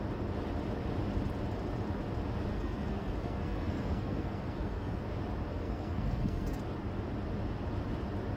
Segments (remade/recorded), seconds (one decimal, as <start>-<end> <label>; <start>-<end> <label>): 0.0-2.5 recorded; 2.5-5.0 remade; 5.0-5.5 recorded; 5.5-6.6 remade; 6.6-8.4 recorded